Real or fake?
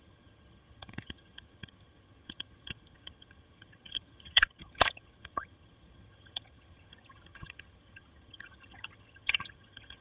fake